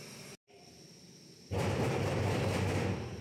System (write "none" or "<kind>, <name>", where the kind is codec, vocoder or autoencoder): none